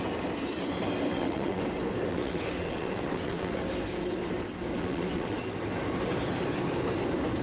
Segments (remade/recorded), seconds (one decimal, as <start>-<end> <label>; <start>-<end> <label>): 0.0-1.1 recorded; 1.1-1.6 remade; 1.6-2.1 recorded; 2.1-3.6 remade; 3.6-4.8 recorded; 4.8-5.5 remade; 5.5-7.4 recorded